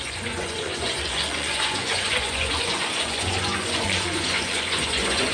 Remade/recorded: remade